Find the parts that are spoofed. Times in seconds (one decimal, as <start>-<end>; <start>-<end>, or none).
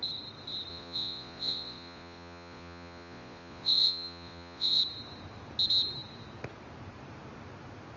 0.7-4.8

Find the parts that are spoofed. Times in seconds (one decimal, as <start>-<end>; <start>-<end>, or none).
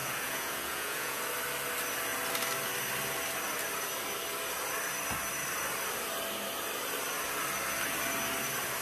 0.0-1.2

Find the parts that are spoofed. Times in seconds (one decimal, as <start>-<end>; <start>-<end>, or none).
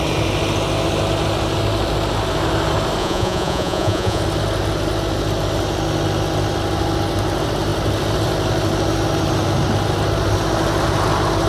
3.0-4.2